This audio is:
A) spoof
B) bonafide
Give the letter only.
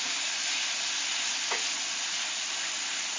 B